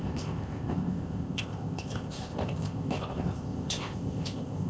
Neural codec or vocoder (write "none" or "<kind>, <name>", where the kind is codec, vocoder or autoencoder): codec, ZipCodec